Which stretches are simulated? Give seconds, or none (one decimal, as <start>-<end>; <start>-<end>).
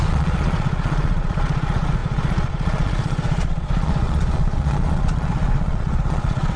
0.0-6.6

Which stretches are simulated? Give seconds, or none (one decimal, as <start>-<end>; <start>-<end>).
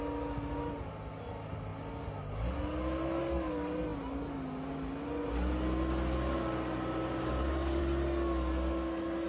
none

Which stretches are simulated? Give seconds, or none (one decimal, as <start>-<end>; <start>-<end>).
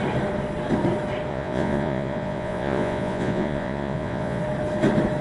1.3-4.4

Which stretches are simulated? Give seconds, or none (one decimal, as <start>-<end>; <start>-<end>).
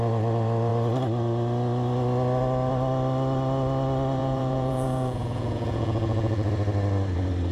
4.2-6.5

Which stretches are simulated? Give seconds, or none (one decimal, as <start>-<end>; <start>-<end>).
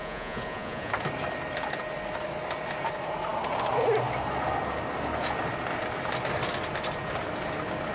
0.0-0.9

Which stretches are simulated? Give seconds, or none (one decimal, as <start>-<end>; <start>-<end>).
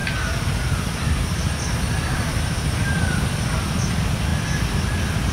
none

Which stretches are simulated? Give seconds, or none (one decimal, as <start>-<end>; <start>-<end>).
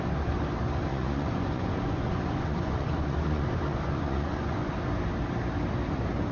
0.9-4.7